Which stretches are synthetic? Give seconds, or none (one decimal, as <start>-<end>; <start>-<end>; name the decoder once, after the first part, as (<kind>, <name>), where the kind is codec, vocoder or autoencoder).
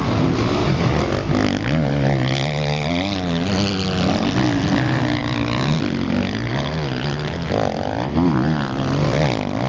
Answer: none